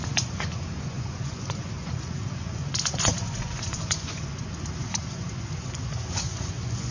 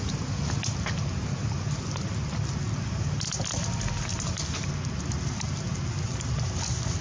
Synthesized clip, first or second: first